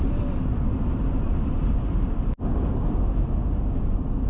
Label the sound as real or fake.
real